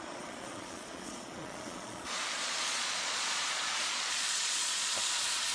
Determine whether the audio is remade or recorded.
remade